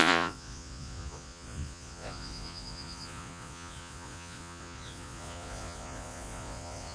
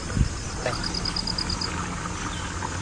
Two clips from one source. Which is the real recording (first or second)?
second